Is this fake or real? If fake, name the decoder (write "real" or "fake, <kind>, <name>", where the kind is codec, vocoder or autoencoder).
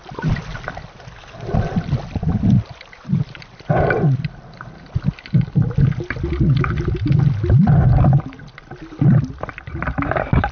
real